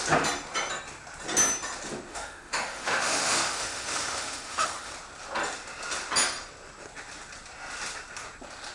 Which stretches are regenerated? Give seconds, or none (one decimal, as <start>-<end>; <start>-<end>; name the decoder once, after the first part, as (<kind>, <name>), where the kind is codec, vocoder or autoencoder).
2.1-4.9 (autoencoder, DAC-VAE)